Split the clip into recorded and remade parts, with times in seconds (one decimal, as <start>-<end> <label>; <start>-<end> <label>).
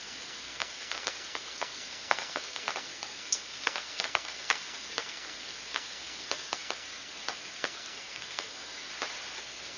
0.0-8.9 remade; 8.9-9.4 recorded; 9.4-9.8 remade